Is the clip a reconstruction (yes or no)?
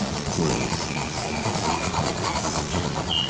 yes